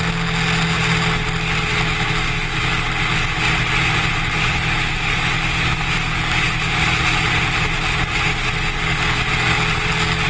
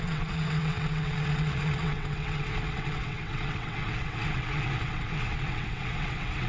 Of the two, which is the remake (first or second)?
second